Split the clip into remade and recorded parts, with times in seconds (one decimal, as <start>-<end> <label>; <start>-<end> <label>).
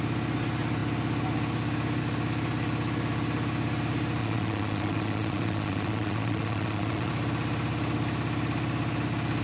0.0-4.2 recorded; 4.2-7.1 remade; 7.1-9.4 recorded